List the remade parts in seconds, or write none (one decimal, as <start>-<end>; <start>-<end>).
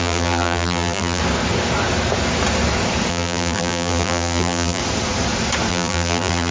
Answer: 0.0-1.2; 3.1-4.8; 5.7-6.5